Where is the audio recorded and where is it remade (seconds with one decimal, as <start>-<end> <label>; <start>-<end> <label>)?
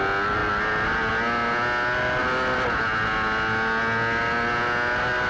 0.0-5.3 recorded